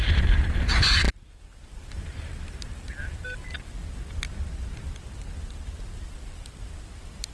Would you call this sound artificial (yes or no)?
no